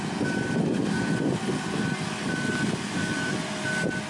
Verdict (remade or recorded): recorded